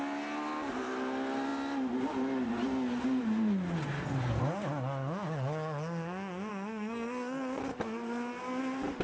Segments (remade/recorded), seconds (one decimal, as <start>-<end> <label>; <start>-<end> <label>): 0.0-6.5 recorded; 6.5-7.6 remade; 7.6-9.0 recorded